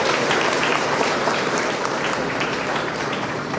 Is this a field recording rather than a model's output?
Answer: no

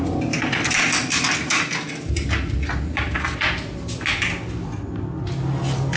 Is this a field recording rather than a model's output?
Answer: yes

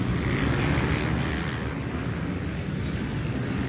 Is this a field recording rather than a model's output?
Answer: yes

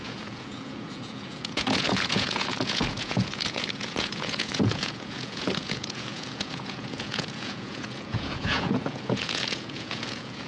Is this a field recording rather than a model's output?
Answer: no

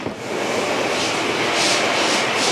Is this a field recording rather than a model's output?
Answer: yes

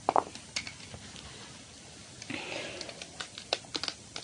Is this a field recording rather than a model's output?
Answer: yes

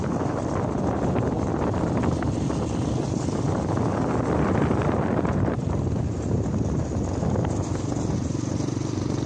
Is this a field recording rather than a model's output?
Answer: yes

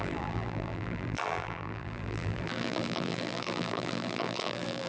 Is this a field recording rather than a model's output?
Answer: no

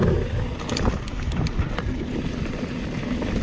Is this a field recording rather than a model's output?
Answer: yes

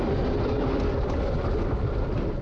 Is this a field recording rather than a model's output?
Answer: yes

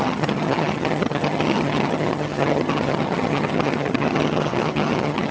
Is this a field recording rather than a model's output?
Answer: no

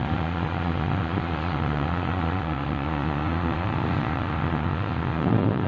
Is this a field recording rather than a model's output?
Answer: no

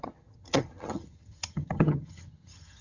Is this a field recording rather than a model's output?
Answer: no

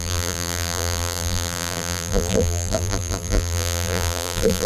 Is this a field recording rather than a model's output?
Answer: no